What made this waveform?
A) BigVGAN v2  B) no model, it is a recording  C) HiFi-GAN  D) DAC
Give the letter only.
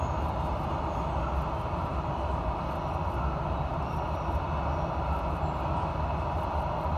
B